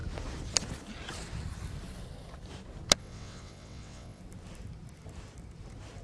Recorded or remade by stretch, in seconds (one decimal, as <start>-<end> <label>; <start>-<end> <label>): 0.0-3.0 recorded; 3.0-4.2 remade; 4.2-6.0 recorded